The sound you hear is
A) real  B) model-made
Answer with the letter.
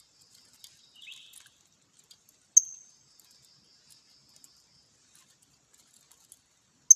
A